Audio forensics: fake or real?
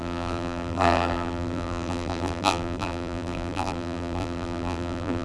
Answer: fake